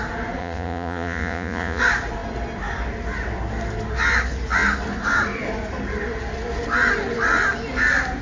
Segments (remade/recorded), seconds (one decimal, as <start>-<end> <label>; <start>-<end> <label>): 0.0-0.4 recorded; 0.4-1.8 remade; 1.8-8.2 recorded